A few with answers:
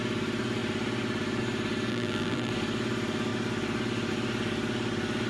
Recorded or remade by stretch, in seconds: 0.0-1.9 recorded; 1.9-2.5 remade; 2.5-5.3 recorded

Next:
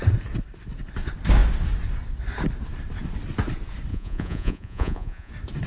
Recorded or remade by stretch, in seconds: 0.0-3.9 recorded; 3.9-5.3 remade; 5.3-5.7 recorded

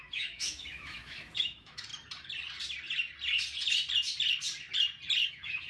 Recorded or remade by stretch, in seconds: 0.0-1.9 remade; 1.9-5.3 recorded; 5.3-5.7 remade

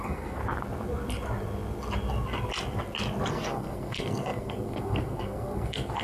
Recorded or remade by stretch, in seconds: 0.0-0.4 remade; 0.4-3.3 recorded; 3.3-6.0 remade